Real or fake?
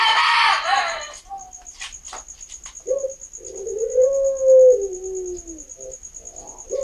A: real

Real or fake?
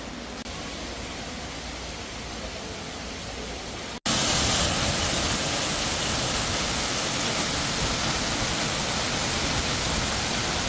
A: real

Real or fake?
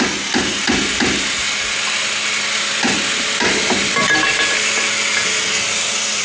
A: real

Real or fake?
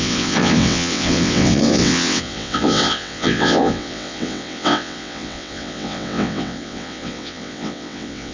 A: fake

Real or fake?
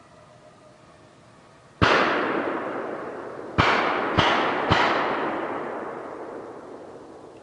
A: real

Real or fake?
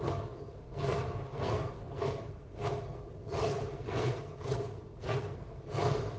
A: fake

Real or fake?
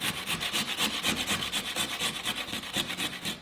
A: real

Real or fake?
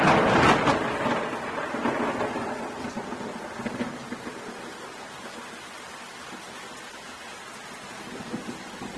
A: real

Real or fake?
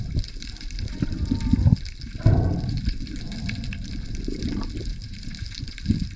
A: real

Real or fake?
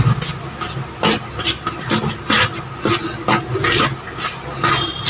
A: real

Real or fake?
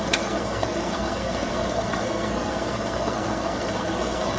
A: fake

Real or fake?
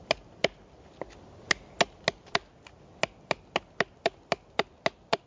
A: real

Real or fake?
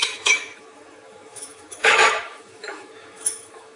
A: fake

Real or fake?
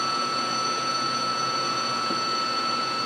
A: fake